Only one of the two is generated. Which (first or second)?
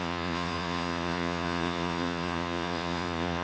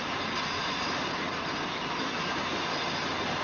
first